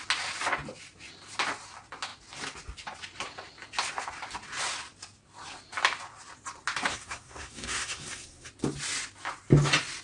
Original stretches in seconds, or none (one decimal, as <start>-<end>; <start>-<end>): 0.0-6.9; 8.5-10.0